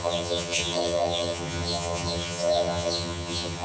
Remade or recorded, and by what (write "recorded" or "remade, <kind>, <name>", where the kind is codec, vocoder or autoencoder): remade, vocoder, HiFi-GAN